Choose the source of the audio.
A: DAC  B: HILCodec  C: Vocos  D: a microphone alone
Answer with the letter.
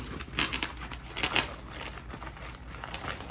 D